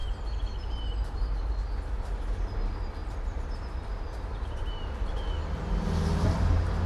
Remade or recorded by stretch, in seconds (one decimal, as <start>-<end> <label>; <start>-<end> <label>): 0.0-1.5 remade; 1.5-3.0 recorded; 3.0-5.2 remade; 5.2-6.9 recorded